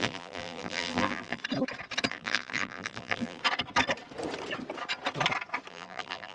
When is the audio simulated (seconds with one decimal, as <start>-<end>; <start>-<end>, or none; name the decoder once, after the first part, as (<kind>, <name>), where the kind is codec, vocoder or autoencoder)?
0.0-1.4 (vocoder, BigVGAN v2); 2.1-3.4; 5.7-6.3

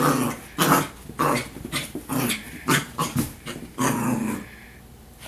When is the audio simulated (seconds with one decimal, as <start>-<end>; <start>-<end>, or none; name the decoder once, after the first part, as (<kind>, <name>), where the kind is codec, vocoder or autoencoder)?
1.4-3.6 (vocoder, BigVGAN v2)

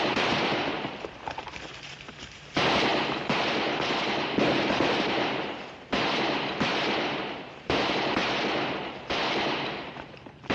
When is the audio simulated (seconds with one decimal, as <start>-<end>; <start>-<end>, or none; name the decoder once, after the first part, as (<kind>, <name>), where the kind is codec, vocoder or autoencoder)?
0.0-2.9 (vocoder, BigVGAN v2); 4.6-8.2; 8.7-10.5

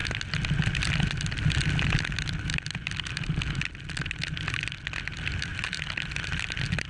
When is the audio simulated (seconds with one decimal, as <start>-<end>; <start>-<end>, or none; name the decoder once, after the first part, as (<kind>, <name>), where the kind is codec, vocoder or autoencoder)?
5.5-6.9 (vocoder, BigVGAN v2)

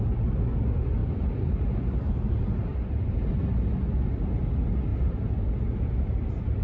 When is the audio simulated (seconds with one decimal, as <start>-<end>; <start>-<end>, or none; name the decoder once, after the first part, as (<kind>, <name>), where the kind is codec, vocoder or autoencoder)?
1.0-2.3 (vocoder, BigVGAN v2); 2.7-3.3; 4.9-5.5

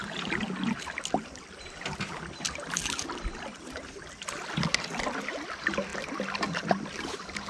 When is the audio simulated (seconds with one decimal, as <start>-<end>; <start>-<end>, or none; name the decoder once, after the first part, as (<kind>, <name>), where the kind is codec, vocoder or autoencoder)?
none

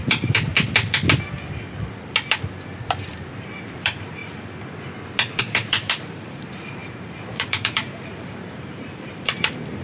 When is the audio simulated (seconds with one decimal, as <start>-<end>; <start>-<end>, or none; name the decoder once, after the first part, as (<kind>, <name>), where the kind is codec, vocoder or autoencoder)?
0.0-0.5 (vocoder, BigVGAN v2); 2.9-4.2; 5.4-9.8

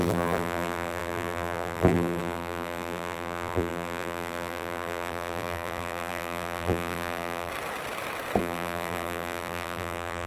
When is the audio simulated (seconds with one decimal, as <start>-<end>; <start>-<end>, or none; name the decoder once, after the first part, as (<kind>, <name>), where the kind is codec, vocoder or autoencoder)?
0.0-7.5 (vocoder, BigVGAN v2); 8.4-10.3